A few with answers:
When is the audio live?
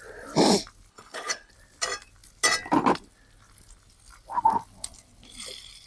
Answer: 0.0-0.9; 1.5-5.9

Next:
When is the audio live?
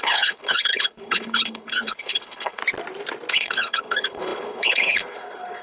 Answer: 2.6-3.3